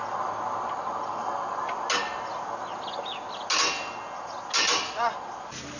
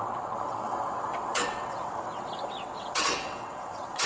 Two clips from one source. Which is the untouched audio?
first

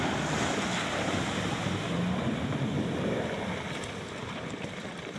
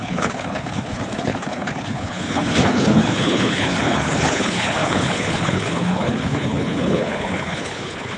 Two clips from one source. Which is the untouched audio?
first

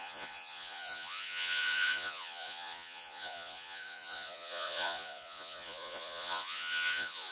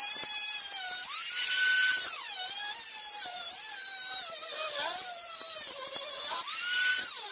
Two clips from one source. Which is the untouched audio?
second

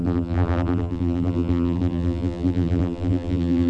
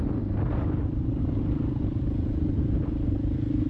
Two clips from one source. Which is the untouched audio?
second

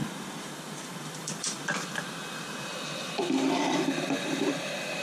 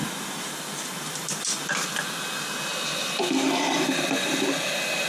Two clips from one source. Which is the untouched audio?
second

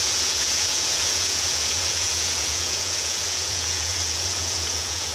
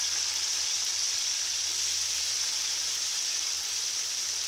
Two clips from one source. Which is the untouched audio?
second